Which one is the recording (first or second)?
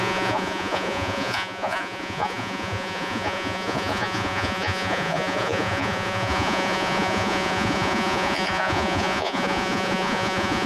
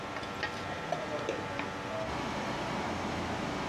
second